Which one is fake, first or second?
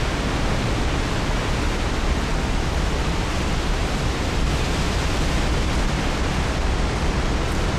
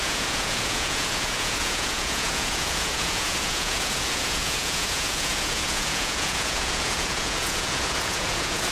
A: second